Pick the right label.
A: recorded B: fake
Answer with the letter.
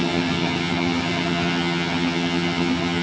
B